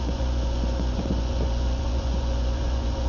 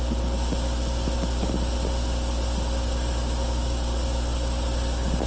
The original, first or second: second